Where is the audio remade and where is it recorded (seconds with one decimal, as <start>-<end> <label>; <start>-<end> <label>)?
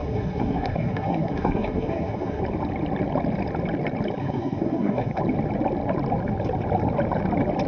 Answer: 0.0-2.4 remade; 2.4-4.2 recorded; 4.2-5.2 remade; 5.2-7.7 recorded